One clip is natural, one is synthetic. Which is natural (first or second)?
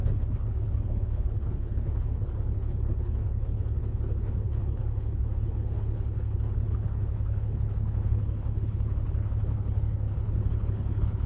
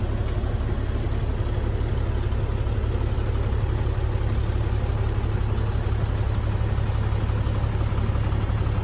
second